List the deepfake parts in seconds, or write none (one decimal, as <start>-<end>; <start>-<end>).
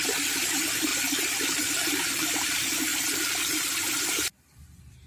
0.0-0.9; 1.7-2.9; 3.9-5.1